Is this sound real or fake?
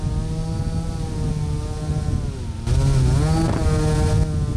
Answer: real